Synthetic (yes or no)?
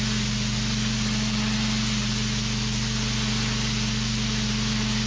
no